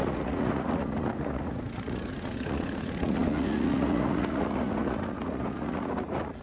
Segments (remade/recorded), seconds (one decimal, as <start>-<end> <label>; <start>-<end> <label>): 0.0-6.4 remade